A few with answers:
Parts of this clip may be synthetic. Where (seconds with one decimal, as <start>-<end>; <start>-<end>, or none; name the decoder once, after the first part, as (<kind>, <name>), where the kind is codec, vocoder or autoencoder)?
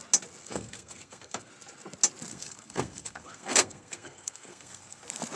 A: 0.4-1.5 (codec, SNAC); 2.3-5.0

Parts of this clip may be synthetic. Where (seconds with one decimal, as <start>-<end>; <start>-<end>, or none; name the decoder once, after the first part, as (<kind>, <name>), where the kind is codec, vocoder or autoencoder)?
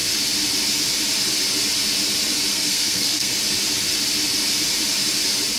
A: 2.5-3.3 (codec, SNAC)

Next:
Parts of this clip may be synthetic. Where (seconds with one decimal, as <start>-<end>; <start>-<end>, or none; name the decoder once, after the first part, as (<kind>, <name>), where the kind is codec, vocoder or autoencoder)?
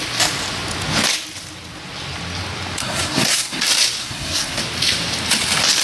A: 2.8-3.6 (codec, SNAC); 4.0-4.6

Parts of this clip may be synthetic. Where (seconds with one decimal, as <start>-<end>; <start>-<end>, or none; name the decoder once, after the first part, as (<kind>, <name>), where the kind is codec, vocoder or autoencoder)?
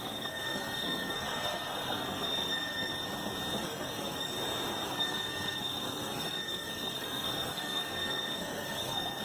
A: 0.0-2.9 (codec, SNAC); 3.6-4.3; 4.9-9.2